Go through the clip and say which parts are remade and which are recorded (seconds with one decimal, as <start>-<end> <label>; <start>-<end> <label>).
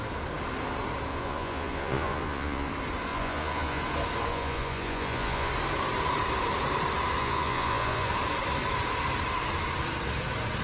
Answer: 0.0-1.1 recorded; 1.1-2.7 remade; 2.7-3.1 recorded; 3.1-3.8 remade; 3.8-4.3 recorded; 4.3-5.5 remade; 5.5-7.2 recorded; 7.2-8.1 remade; 8.1-10.6 recorded